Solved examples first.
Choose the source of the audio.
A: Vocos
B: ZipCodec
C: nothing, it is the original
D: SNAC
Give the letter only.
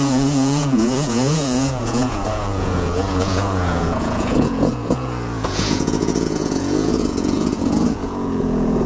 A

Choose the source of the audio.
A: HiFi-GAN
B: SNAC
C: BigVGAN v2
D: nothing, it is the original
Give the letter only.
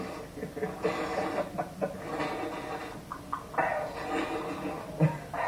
D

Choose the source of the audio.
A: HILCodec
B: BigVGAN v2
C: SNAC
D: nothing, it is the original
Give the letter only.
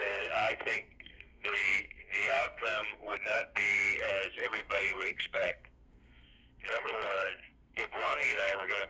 C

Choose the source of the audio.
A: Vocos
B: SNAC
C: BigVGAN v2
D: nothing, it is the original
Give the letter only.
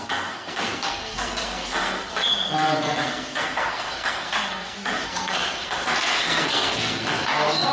B